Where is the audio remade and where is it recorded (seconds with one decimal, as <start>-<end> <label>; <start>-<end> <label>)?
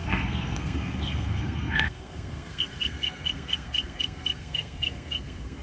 0.0-5.6 remade